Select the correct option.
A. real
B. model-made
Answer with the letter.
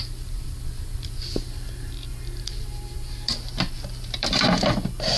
B